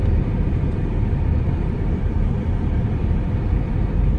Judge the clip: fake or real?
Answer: real